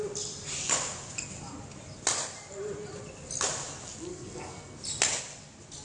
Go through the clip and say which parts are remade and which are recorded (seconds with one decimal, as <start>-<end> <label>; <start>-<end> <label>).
0.0-4.1 recorded; 4.1-4.8 remade; 4.8-5.8 recorded